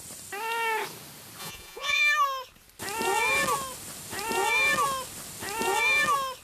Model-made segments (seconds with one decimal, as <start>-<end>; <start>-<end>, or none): 1.4-2.0